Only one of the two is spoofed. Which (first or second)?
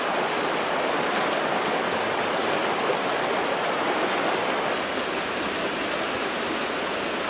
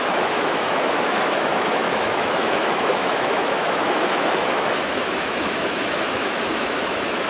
second